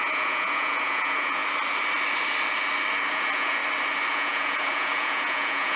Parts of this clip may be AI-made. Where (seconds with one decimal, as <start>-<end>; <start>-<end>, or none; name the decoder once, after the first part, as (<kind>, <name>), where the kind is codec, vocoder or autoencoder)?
0.0-1.4 (vocoder, Vocos); 3.1-3.6; 4.1-5.8